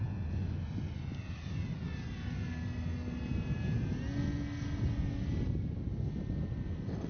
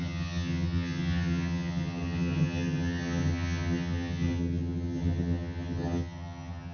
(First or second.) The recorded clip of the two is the first